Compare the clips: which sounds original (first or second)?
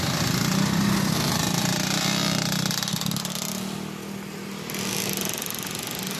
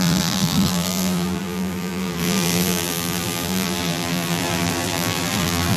first